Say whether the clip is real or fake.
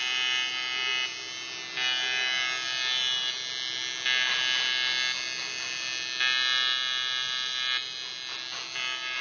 real